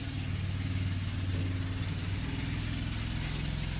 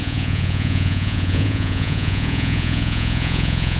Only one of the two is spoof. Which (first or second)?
second